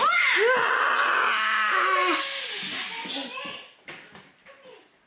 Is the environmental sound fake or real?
real